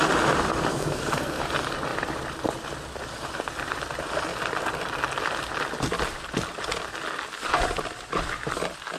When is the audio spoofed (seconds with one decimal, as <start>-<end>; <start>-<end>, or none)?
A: 0.7-1.4